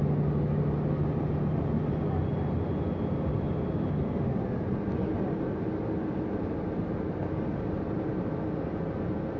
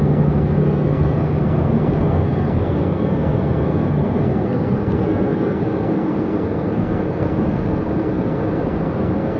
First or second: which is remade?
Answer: second